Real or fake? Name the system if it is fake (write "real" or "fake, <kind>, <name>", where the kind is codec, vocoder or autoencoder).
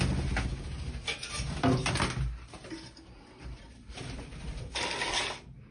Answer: real